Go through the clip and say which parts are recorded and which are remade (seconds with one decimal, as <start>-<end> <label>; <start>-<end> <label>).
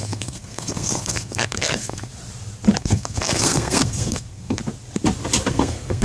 0.0-2.1 remade; 2.1-2.8 recorded; 2.8-4.6 remade; 4.6-5.5 recorded; 5.5-6.0 remade